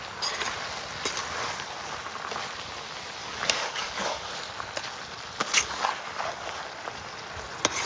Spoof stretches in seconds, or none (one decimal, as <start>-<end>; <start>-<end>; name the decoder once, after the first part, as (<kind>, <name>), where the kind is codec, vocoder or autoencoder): 3.2-4.3 (codec, DAC); 5.4-6.6